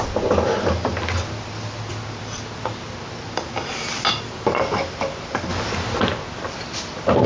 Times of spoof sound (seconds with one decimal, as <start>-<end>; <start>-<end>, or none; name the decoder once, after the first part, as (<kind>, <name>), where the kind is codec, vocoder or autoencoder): none